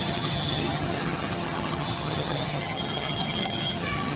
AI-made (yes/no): yes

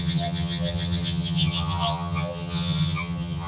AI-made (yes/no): yes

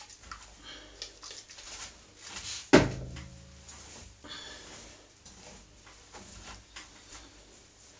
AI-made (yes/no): no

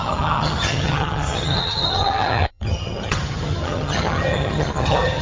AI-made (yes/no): yes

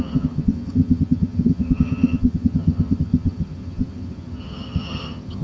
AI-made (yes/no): yes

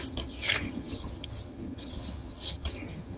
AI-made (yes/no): yes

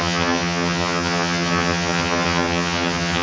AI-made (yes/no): yes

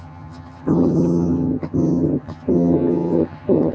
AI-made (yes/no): yes